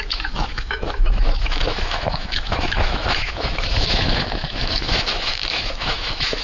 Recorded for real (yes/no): no